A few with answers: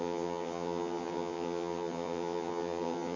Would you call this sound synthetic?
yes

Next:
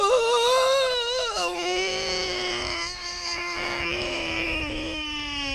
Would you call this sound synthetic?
yes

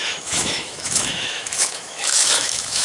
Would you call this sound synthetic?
yes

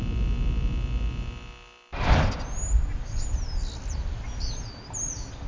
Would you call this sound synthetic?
no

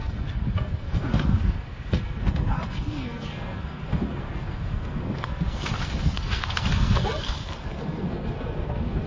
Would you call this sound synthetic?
yes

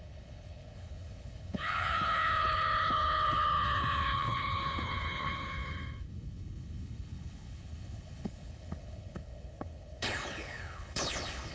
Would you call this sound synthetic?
yes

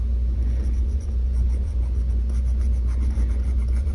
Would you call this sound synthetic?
yes